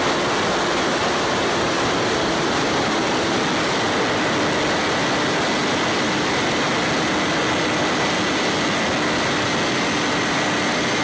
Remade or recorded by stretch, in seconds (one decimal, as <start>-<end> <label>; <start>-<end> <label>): 0.0-0.7 recorded; 0.7-3.4 remade; 3.4-11.0 recorded